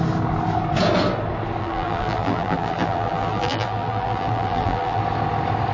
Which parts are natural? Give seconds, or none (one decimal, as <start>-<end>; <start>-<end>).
0.0-1.6; 5.0-5.7